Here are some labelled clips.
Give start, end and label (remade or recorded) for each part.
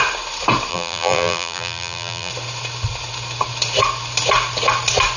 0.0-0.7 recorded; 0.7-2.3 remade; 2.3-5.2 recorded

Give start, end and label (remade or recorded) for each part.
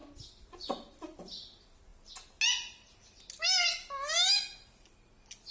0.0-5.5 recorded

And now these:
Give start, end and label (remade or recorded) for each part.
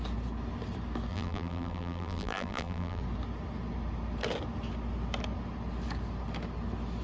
0.0-1.1 recorded; 1.1-3.0 remade; 3.0-7.0 recorded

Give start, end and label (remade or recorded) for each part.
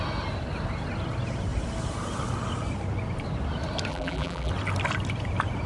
0.0-3.9 recorded; 3.9-4.5 remade; 4.5-5.7 recorded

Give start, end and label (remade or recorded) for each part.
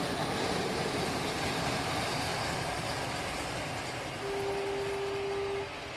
0.0-2.3 remade; 2.3-6.0 recorded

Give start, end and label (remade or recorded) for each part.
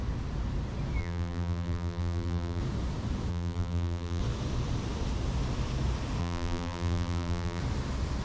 0.0-1.0 recorded; 1.0-2.6 remade; 2.6-3.3 recorded; 3.3-4.2 remade; 4.2-6.2 recorded; 6.2-7.6 remade; 7.6-8.2 recorded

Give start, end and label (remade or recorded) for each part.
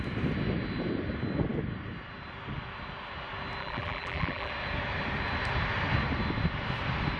0.0-3.6 recorded; 3.6-4.5 remade; 4.5-7.2 recorded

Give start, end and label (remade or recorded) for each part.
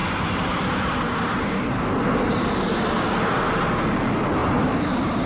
0.0-3.2 remade; 3.2-4.4 recorded; 4.4-5.3 remade